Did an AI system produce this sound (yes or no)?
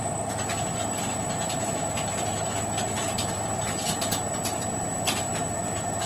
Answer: no